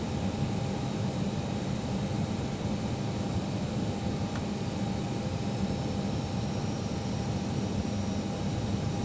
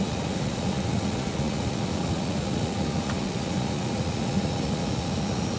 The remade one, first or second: second